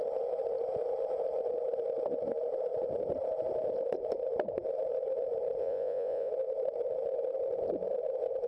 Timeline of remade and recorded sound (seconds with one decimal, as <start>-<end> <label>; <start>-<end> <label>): 0.0-5.6 recorded; 5.6-6.3 remade; 6.3-8.5 recorded